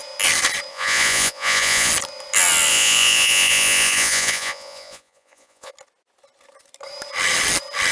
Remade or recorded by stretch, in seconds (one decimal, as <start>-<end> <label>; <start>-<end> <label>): 0.0-0.7 recorded; 0.7-1.9 remade; 1.9-2.7 recorded; 2.7-5.7 remade; 5.7-7.9 recorded